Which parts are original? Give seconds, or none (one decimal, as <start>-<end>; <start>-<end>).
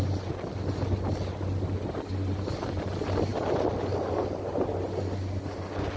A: 0.0-6.0